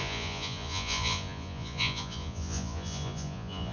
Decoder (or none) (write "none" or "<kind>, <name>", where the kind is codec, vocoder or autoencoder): vocoder, Vocos